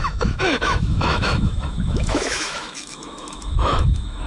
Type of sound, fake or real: fake